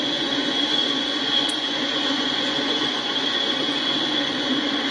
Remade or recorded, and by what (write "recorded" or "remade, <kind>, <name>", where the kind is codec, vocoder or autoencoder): remade, vocoder, Vocos